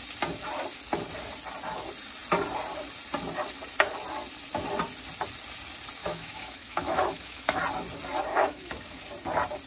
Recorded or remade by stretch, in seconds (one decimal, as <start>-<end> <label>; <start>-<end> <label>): 0.0-6.0 recorded; 6.0-7.6 remade; 7.6-8.3 recorded; 8.3-9.0 remade; 9.0-9.7 recorded